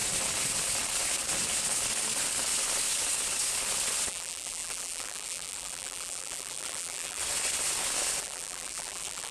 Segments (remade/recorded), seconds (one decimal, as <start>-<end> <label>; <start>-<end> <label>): 0.0-4.1 recorded; 4.1-7.2 remade; 7.2-8.2 recorded; 8.2-9.3 remade